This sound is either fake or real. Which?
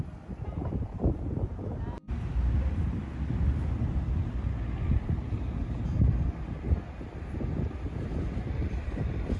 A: fake